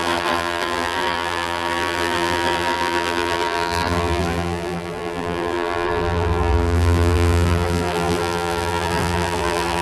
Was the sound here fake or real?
fake